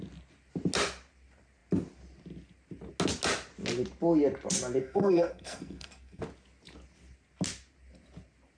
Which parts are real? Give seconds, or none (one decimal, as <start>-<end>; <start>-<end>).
0.0-4.8; 6.2-8.6